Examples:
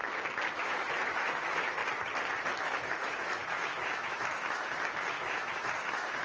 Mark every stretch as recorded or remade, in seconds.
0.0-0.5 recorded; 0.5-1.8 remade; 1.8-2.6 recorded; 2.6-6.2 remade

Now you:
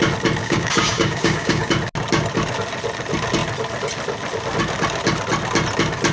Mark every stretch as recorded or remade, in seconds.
0.0-0.4 recorded; 0.4-1.7 remade; 1.7-6.1 recorded

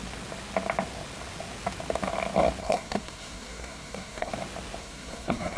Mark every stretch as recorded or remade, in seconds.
0.0-2.6 recorded; 2.6-4.3 remade; 4.3-4.8 recorded; 4.8-5.6 remade

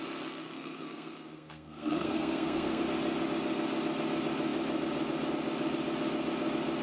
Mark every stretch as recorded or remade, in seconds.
0.0-0.4 recorded; 0.4-2.8 remade; 2.8-6.8 recorded

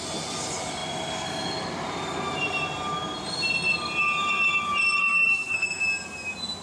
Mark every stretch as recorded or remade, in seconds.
0.0-5.0 recorded; 5.0-5.8 remade; 5.8-6.6 recorded

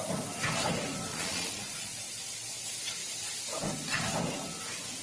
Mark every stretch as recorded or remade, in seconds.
0.0-1.1 recorded; 1.1-2.0 remade; 2.0-5.0 recorded

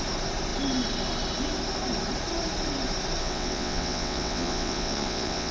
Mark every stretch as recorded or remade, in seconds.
0.0-3.2 recorded; 3.2-5.5 remade